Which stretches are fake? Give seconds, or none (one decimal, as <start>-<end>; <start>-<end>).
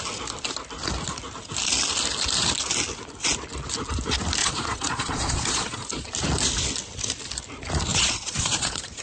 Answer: 4.4-6.1; 7.9-9.0